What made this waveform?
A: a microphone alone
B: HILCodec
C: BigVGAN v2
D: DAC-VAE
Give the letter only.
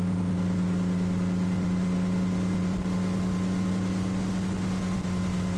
A